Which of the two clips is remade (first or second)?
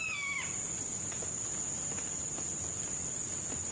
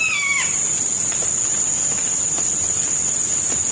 second